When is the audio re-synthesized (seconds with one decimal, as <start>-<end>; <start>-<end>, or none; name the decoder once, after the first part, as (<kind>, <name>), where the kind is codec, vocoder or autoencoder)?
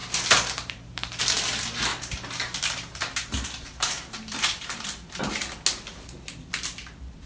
0.0-1.2 (vocoder, BigVGAN v2); 1.9-5.2